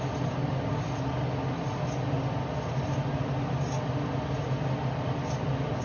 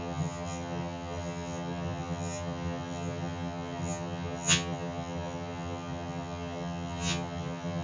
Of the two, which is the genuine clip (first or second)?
first